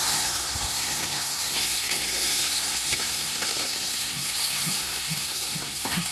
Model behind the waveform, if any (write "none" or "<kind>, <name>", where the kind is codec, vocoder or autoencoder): codec, SNAC